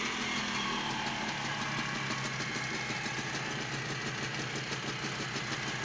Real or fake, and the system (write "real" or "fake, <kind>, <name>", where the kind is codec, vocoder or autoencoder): real